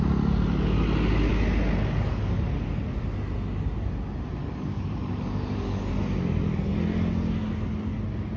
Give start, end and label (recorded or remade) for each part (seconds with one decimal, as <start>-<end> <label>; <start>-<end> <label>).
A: 0.0-4.4 recorded; 4.4-5.9 remade; 5.9-8.4 recorded